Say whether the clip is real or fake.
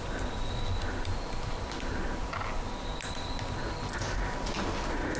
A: real